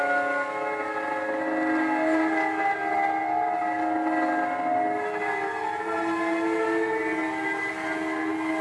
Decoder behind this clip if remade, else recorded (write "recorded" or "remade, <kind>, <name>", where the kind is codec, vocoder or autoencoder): recorded